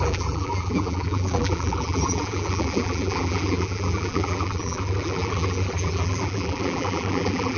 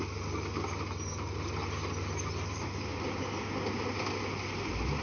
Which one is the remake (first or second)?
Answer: first